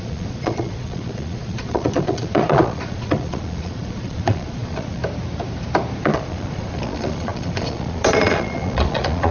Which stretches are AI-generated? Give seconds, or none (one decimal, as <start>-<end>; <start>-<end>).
0.0-5.0; 6.0-9.3